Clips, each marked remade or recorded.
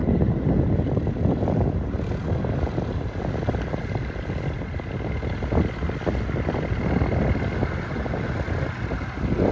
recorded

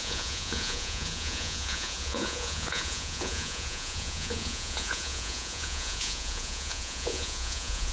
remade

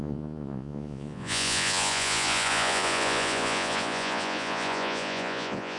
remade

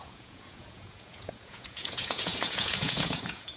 remade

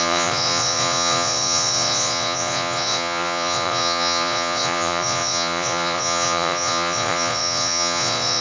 remade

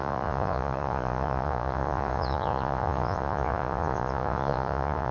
remade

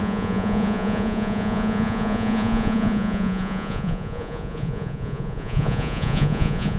remade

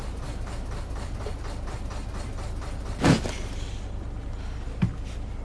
recorded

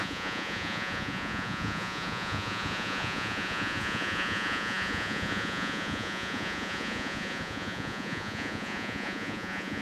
remade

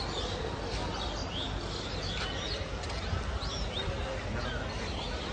recorded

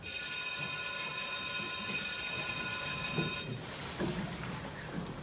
recorded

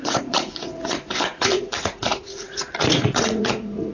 remade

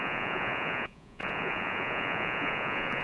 remade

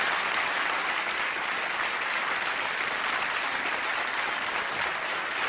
recorded